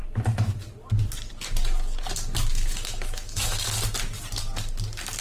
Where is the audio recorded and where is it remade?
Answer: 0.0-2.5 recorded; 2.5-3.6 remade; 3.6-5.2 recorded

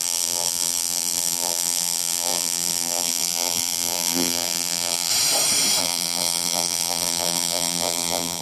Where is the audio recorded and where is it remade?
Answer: 0.0-5.1 remade; 5.1-5.8 recorded; 5.8-8.4 remade

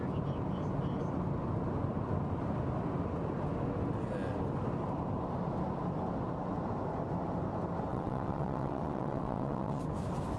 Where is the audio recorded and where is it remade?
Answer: 0.0-7.9 recorded; 7.9-9.8 remade; 9.8-10.4 recorded

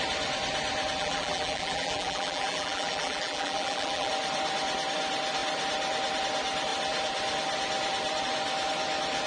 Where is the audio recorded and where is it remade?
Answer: 0.0-1.0 recorded; 1.0-4.1 remade; 4.1-9.3 recorded

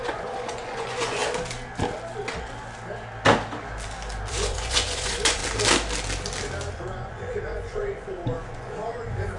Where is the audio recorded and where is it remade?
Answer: 0.0-1.2 remade; 1.2-4.3 recorded; 4.3-5.4 remade; 5.4-6.7 recorded; 6.7-9.4 remade

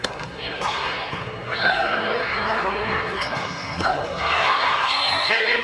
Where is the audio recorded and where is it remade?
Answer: 0.0-5.6 remade